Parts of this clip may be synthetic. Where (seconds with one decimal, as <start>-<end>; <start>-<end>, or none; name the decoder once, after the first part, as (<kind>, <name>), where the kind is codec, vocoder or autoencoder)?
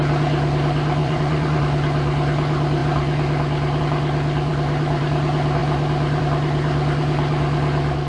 1.0-1.6 (vocoder, Vocos)